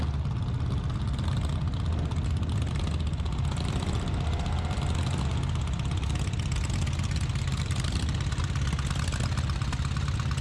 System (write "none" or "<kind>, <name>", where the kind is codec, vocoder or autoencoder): none